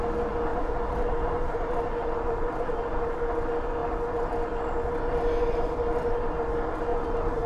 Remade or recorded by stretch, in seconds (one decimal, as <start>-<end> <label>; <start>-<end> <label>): 0.0-7.5 recorded